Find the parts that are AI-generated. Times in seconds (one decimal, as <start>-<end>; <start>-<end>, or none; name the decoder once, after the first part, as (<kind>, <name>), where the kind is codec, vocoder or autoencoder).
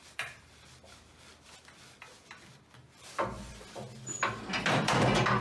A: 0.0-0.7 (vocoder, BigVGAN v2); 2.8-3.5